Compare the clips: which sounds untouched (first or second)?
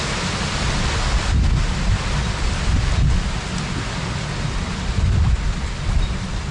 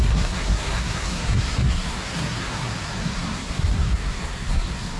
first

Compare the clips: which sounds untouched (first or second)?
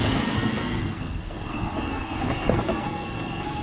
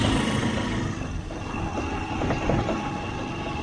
second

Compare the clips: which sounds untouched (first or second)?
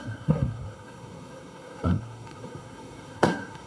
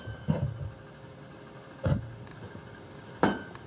second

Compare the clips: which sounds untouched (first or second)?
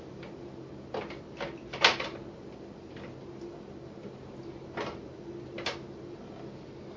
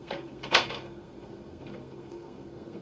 first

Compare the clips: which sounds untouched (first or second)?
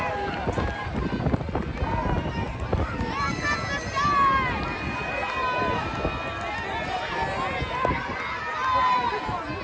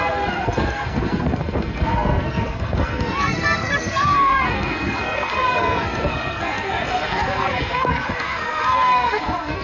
first